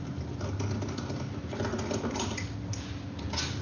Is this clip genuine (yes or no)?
yes